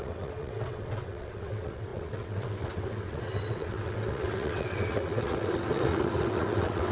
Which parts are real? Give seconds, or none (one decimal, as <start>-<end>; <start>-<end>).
none